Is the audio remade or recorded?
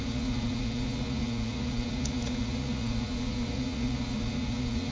remade